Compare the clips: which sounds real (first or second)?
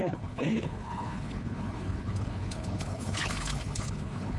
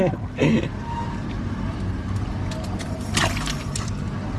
second